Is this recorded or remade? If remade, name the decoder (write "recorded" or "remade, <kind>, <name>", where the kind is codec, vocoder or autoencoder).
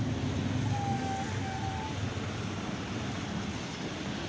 recorded